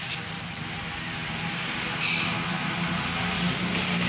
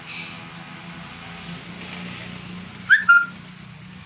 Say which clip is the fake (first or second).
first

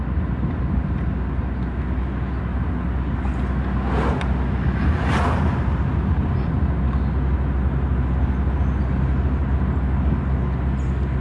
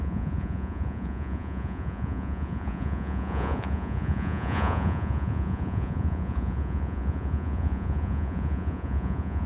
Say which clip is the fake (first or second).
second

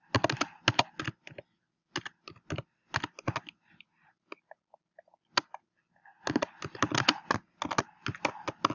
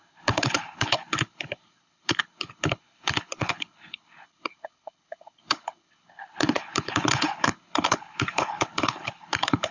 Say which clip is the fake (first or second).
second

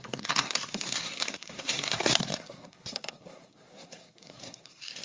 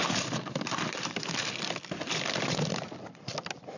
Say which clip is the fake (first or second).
first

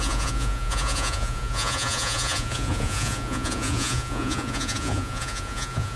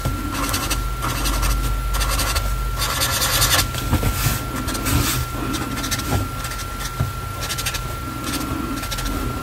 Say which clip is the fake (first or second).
first